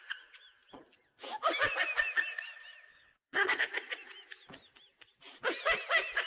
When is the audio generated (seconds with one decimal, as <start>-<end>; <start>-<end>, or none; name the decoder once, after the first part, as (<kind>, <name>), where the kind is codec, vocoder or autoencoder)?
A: 2.9-3.7 (codec, HILCodec)